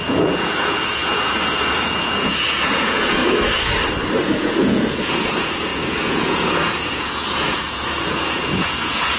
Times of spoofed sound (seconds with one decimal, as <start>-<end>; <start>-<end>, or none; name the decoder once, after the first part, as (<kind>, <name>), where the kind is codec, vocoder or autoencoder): 0.0-3.2 (vocoder, Vocos); 4.4-9.2